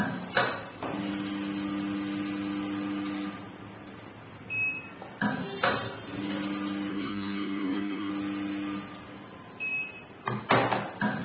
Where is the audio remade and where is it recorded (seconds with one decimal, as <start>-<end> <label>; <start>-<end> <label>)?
0.0-6.9 recorded; 6.9-8.1 remade; 8.1-11.2 recorded